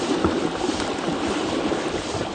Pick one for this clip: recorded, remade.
recorded